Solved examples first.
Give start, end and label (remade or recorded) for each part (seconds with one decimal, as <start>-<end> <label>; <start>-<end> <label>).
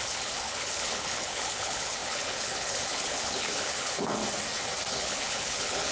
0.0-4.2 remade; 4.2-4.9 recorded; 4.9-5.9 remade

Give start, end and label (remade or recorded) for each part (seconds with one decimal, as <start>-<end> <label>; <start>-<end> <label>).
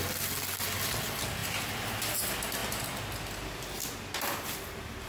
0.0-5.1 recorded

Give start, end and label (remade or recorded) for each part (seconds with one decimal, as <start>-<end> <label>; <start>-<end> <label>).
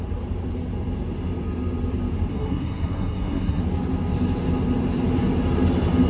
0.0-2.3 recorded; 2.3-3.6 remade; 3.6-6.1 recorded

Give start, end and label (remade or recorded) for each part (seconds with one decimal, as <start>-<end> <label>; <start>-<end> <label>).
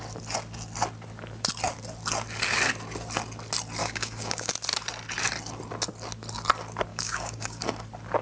0.0-3.8 recorded; 3.8-4.5 remade; 4.5-6.9 recorded; 6.9-7.6 remade; 7.6-8.2 recorded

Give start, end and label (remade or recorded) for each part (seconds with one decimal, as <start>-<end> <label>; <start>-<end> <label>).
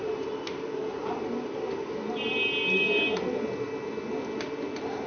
0.0-5.1 recorded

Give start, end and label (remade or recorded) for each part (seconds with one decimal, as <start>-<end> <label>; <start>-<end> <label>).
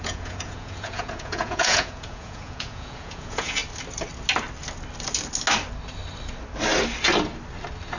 0.0-3.6 remade; 3.6-8.0 recorded